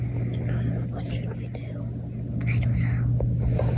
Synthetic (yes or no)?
no